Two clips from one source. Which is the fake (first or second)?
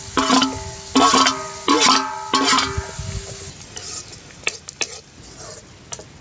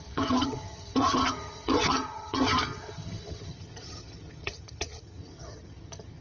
second